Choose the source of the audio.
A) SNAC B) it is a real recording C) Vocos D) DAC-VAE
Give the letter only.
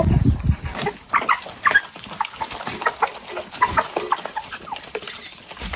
B